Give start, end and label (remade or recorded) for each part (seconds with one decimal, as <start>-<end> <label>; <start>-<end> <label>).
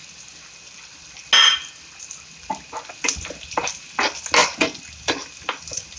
0.0-6.0 recorded